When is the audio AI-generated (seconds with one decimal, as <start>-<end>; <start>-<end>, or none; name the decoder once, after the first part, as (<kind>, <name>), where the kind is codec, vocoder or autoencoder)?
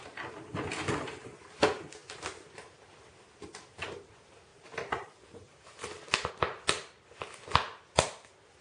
4.5-6.3 (vocoder, BigVGAN v2)